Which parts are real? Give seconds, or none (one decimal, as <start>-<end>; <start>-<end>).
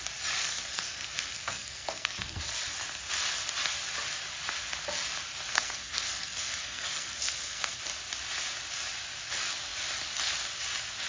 0.0-0.4; 2.4-5.5; 7.8-11.1